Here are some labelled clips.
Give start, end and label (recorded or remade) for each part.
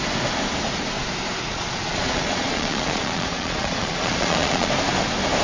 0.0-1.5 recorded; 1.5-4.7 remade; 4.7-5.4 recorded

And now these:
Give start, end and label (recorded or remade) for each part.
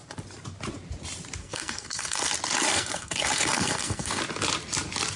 0.0-1.4 recorded; 1.4-2.3 remade; 2.3-2.7 recorded; 2.7-4.2 remade; 4.2-5.2 recorded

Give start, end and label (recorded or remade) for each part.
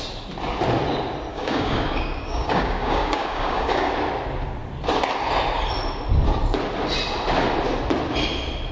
0.0-1.3 recorded; 1.3-3.9 remade; 3.9-8.7 recorded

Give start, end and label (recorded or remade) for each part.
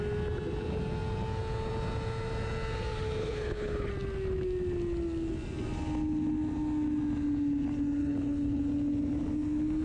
0.0-3.2 recorded; 3.2-3.9 remade; 3.9-8.0 recorded; 8.0-8.6 remade; 8.6-9.8 recorded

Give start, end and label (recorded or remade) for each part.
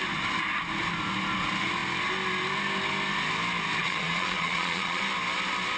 0.0-3.8 recorded; 3.8-5.0 remade; 5.0-5.8 recorded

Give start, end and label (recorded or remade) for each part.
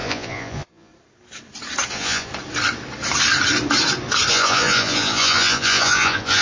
0.0-0.9 remade; 0.9-1.9 recorded; 1.9-2.3 remade; 2.3-4.3 recorded; 4.3-6.4 remade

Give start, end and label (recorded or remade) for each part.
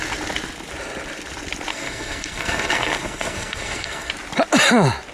0.0-1.7 recorded; 1.7-4.1 remade; 4.1-5.1 recorded